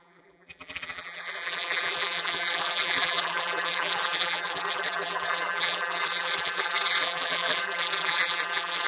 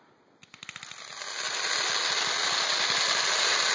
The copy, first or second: first